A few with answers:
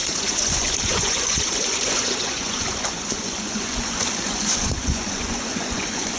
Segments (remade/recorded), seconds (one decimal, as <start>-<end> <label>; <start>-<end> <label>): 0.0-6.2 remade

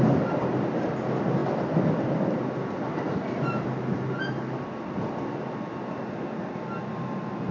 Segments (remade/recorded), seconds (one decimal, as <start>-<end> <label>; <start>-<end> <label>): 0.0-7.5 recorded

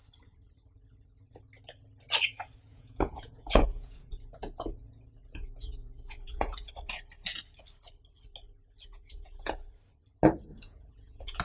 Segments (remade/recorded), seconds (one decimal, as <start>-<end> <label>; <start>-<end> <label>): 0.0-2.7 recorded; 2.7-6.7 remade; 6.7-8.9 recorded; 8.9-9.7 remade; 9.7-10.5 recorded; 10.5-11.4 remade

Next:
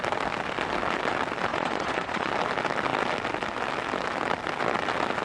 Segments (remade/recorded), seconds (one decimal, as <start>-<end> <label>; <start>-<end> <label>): 0.0-1.5 recorded; 1.5-2.3 remade; 2.3-5.2 recorded